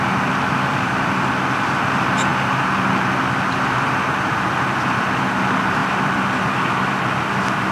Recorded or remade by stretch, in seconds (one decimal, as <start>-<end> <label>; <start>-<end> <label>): 0.0-0.7 recorded; 0.7-1.3 remade; 1.3-5.8 recorded; 5.8-7.3 remade; 7.3-7.7 recorded

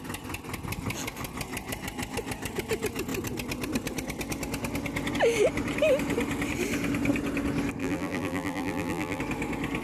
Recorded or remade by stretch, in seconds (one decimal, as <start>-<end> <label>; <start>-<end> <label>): 0.0-7.8 recorded; 7.8-9.2 remade; 9.2-9.8 recorded

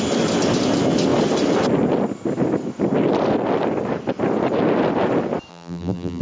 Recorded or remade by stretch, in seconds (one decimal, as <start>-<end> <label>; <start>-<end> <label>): 0.0-5.5 recorded; 5.5-6.2 remade

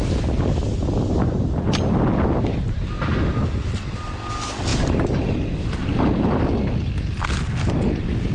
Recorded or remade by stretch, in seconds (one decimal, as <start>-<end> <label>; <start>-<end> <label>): 0.0-4.7 recorded; 4.7-6.4 remade; 6.4-8.3 recorded

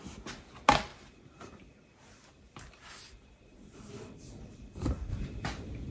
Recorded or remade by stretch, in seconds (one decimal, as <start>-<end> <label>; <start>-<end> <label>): 0.0-0.9 recorded; 0.9-4.2 remade; 4.2-5.1 recorded; 5.1-5.9 remade

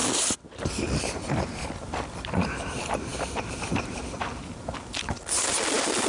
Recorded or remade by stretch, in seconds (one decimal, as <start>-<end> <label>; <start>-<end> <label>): 0.0-1.0 recorded; 1.0-6.1 remade